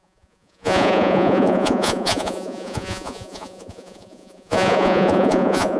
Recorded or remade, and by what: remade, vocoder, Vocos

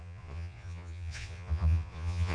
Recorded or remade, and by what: remade, vocoder, Vocos